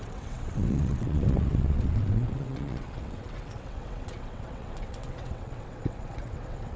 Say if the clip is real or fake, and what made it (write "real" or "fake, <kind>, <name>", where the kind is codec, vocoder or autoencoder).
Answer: fake, vocoder, WaveNeXt